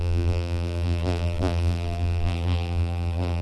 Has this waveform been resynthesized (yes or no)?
yes